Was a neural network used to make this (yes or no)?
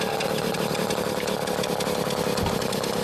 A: no